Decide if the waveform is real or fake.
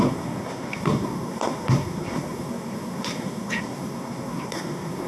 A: fake